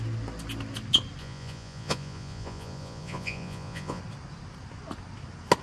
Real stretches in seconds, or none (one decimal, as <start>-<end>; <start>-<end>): 0.0-1.2; 4.0-5.6